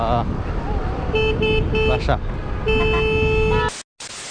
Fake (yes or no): no